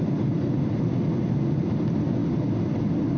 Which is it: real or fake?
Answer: real